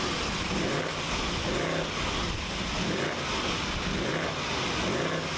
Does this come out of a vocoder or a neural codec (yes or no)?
no